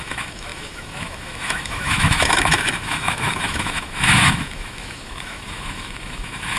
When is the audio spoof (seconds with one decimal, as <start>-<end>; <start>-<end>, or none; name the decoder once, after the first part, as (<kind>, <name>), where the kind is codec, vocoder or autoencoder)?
0.0-6.6 (autoencoder, DAC-VAE)